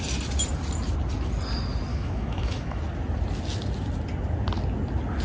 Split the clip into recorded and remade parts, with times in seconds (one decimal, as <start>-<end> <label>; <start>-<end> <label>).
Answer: 0.0-1.9 recorded; 1.9-2.8 remade; 2.8-5.2 recorded